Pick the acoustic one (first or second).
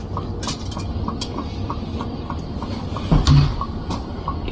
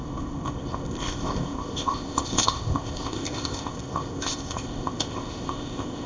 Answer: first